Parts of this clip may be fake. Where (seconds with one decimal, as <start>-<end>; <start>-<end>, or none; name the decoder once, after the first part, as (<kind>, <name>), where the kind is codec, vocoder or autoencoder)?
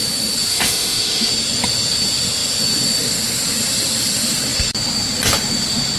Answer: 0.5-1.3 (autoencoder, DAC-VAE)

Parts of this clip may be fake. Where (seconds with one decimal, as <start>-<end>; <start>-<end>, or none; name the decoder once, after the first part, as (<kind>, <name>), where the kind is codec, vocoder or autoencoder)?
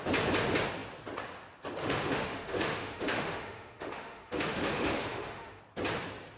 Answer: 1.8-5.6 (autoencoder, DAC-VAE)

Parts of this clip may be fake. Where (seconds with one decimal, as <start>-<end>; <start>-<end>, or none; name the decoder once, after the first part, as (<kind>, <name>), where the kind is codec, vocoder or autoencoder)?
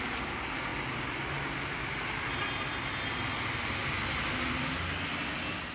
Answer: none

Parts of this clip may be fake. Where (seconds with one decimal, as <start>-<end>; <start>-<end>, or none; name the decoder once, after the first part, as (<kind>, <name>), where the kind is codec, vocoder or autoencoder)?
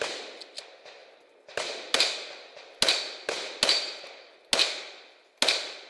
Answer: none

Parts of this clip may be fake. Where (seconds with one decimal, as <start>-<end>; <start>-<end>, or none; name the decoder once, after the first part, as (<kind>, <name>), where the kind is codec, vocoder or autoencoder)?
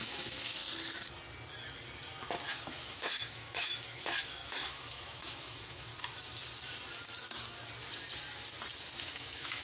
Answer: 0.0-0.6 (autoencoder, DAC-VAE); 2.5-5.9; 9.0-9.6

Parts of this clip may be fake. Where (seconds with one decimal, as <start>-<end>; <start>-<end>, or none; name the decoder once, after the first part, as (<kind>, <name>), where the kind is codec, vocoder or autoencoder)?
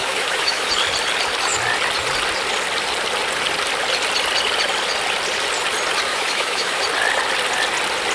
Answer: 0.0-0.7 (autoencoder, DAC-VAE); 6.1-6.8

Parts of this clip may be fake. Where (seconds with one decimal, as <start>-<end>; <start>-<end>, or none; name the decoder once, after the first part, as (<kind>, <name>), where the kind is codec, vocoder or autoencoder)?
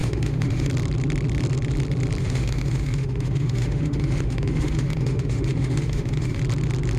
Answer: 0.0-0.7 (autoencoder, DAC-VAE); 2.2-6.4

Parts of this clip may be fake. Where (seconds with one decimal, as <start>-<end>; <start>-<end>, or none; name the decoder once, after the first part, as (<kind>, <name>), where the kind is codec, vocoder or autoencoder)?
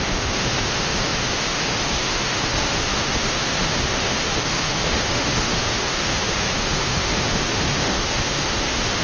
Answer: 0.0-9.0 (autoencoder, DAC-VAE)